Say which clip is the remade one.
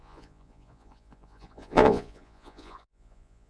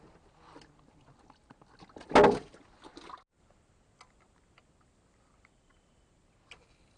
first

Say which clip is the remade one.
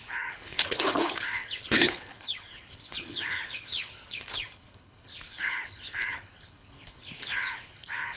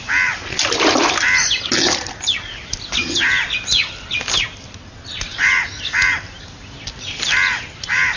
first